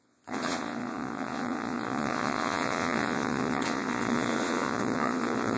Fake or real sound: fake